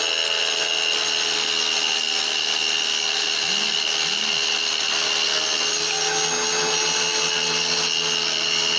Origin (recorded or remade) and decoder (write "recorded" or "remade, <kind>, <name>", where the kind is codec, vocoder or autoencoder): recorded